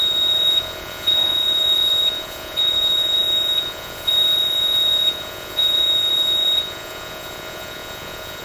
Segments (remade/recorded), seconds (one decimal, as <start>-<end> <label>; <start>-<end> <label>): 0.0-8.4 remade